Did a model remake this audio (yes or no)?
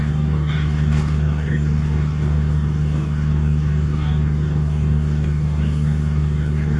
yes